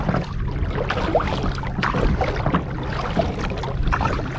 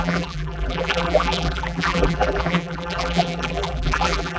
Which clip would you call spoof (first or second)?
second